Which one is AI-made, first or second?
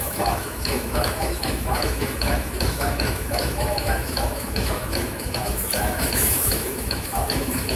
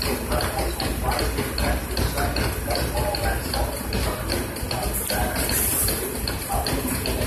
first